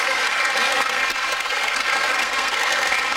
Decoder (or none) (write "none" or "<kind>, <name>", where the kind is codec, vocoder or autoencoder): codec, SNAC